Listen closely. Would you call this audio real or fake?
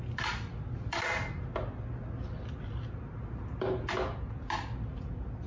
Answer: real